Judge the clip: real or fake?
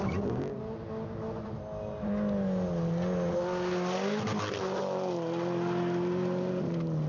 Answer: real